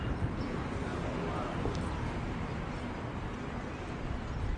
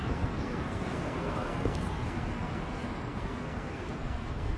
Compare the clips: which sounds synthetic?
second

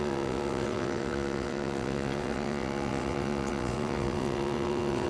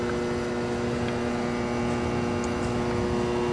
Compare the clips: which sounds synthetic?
first